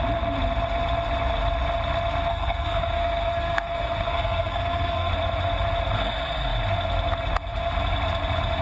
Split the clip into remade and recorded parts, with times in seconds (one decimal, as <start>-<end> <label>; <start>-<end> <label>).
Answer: 0.0-2.3 recorded; 2.3-5.1 remade; 5.1-8.6 recorded